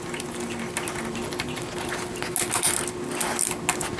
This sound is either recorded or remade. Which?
recorded